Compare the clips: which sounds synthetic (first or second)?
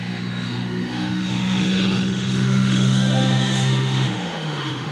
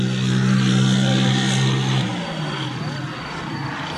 first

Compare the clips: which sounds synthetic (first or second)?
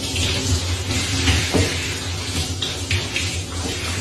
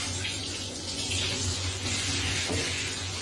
second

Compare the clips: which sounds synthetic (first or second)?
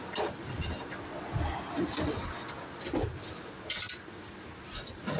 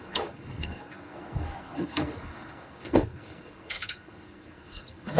second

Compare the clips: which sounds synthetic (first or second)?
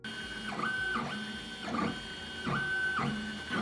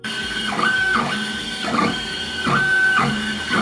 second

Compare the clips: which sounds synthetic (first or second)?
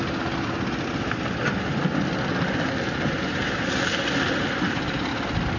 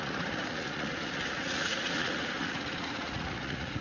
second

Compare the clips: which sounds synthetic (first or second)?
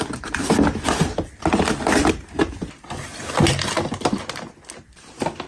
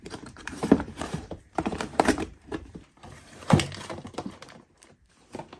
second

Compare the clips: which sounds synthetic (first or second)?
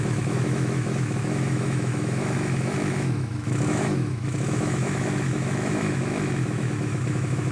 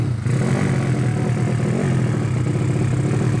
first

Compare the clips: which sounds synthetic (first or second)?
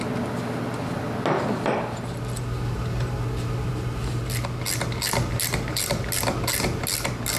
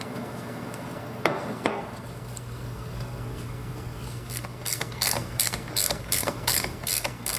second